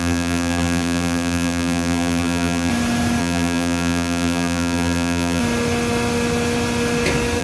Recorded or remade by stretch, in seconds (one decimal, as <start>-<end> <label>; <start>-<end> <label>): 0.0-2.7 remade; 2.7-3.2 recorded; 3.2-5.4 remade; 5.4-7.4 recorded